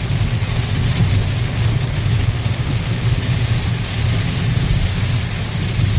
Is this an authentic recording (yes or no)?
yes